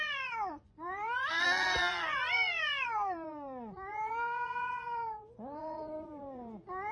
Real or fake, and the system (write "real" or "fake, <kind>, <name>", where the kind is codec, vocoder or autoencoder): fake, vocoder, Vocos